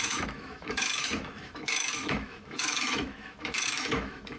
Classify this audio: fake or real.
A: fake